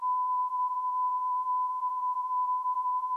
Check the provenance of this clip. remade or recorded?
remade